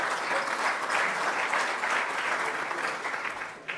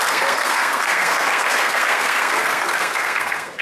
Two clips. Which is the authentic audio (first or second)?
first